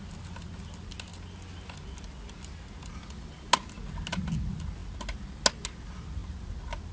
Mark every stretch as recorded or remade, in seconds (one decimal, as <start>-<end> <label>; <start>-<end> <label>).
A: 0.0-6.9 recorded